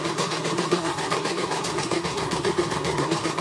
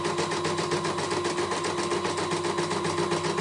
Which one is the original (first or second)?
second